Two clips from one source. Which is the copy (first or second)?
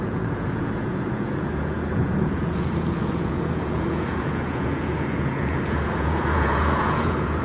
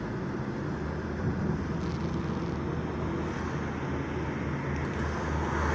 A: first